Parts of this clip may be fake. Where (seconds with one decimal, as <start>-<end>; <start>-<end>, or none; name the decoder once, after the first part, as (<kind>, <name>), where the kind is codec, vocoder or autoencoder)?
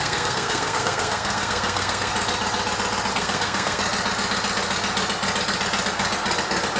0.0-2.1 (codec, SNAC); 3.1-3.8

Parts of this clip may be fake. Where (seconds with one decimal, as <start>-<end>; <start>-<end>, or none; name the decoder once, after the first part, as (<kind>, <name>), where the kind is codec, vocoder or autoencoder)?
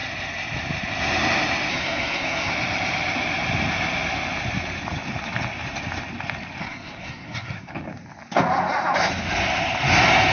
1.7-2.5 (codec, SNAC); 6.6-7.7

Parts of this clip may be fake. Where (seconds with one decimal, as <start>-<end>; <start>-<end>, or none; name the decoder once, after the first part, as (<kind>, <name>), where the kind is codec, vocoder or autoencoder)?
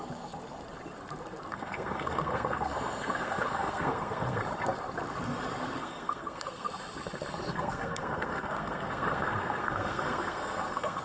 1.5-4.4 (codec, SNAC); 5.8-6.7; 7.5-11.0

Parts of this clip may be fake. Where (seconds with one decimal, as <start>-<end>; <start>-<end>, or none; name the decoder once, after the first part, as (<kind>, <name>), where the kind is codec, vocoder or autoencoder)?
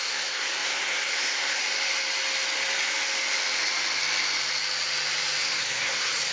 0.0-1.6 (codec, SNAC); 5.4-6.3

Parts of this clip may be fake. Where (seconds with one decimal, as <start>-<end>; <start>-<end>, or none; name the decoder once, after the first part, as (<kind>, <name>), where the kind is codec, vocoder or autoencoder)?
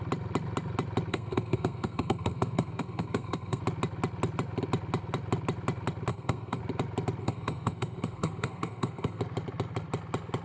1.1-3.6 (codec, SNAC); 6.1-6.6; 7.2-9.2